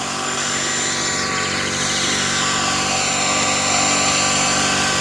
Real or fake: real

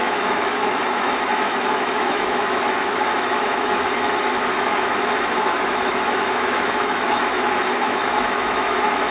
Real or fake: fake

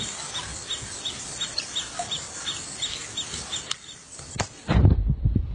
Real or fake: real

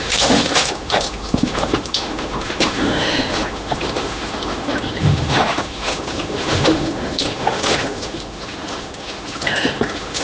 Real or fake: fake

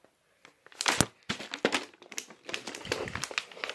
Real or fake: real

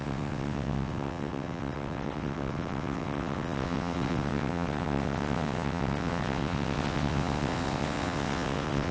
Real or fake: fake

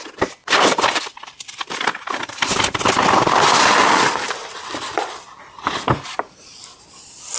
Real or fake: fake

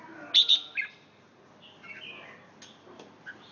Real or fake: real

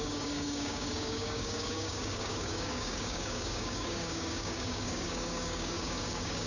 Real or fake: fake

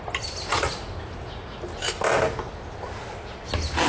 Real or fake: real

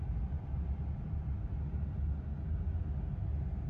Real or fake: real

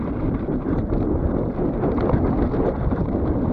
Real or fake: real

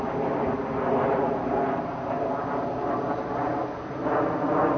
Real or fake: real